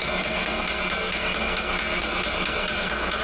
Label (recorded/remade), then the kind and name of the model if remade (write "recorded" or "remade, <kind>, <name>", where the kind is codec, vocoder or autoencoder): remade, codec, SNAC